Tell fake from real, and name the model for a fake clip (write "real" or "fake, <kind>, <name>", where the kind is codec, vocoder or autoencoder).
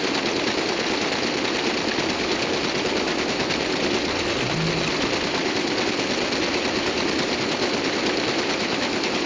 real